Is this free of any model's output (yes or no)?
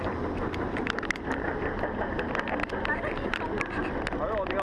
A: yes